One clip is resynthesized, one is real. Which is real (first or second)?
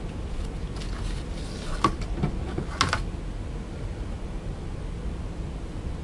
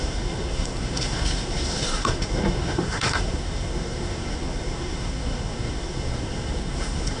first